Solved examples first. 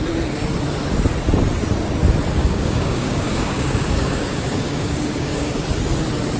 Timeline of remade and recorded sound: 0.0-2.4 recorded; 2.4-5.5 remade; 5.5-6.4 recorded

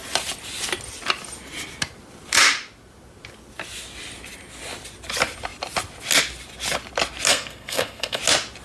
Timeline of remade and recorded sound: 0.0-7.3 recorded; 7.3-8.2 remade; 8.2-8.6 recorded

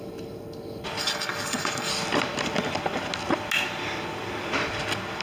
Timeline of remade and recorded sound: 0.0-1.0 recorded; 1.0-1.9 remade; 1.9-5.2 recorded

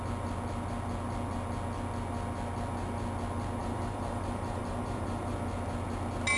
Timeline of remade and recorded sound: 0.0-3.6 recorded; 3.6-5.3 remade; 5.3-6.4 recorded

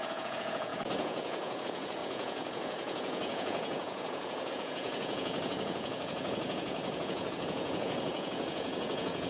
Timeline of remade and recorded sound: 0.0-9.3 remade

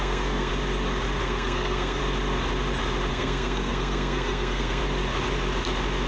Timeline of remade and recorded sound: 0.0-0.5 remade; 0.5-1.2 recorded; 1.2-2.0 remade; 2.0-3.1 recorded; 3.1-4.8 remade; 4.8-6.1 recorded